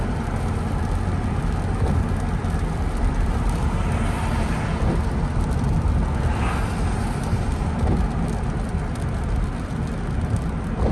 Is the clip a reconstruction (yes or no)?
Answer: no